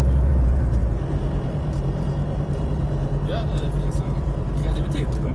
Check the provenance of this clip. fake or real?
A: fake